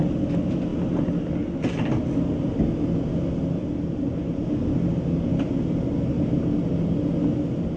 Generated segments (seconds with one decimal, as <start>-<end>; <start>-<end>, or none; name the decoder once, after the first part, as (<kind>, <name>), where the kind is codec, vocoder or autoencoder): none